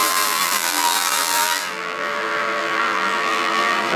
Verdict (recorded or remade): remade